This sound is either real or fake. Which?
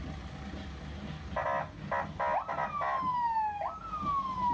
real